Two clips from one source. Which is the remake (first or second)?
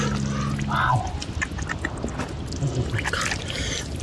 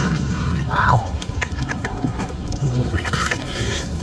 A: second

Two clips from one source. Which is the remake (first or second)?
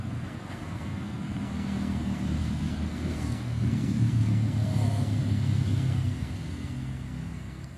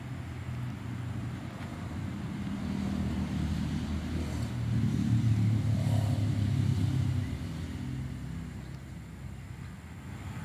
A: first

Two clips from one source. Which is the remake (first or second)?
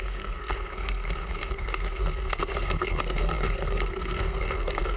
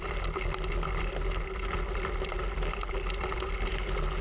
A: first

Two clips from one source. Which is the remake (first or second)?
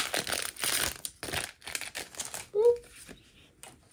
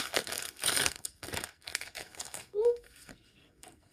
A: second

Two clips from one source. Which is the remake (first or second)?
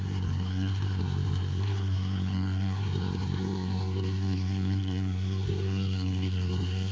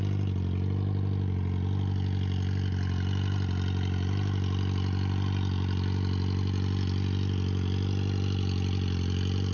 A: first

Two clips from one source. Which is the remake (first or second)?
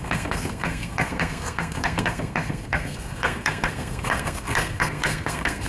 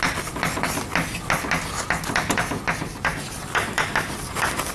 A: first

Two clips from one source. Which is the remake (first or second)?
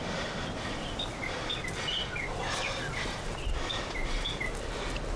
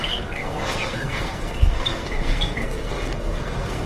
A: second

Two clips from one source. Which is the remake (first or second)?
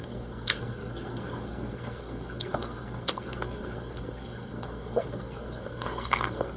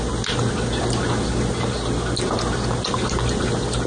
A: first